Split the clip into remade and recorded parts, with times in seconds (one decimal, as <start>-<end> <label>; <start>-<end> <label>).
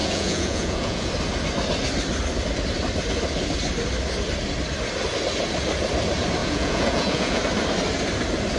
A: 0.0-1.1 remade; 1.1-6.4 recorded; 6.4-7.4 remade; 7.4-8.6 recorded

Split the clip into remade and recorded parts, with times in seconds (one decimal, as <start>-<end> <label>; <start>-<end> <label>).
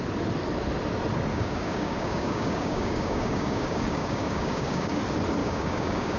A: 0.0-1.3 recorded; 1.3-5.0 remade; 5.0-5.4 recorded; 5.4-6.2 remade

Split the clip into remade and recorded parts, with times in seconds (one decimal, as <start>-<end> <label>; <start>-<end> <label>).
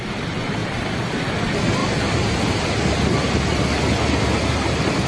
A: 0.0-5.1 recorded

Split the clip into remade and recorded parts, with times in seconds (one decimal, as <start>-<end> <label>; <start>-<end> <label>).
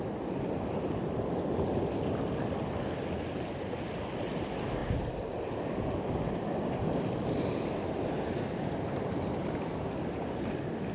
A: 0.0-10.9 recorded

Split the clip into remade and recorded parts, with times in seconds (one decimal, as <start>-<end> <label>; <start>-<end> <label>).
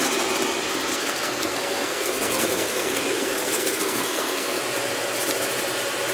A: 0.0-0.9 recorded; 0.9-4.6 remade; 4.6-6.1 recorded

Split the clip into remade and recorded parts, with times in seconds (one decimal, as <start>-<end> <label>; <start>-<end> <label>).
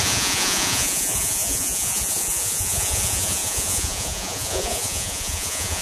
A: 0.0-5.8 remade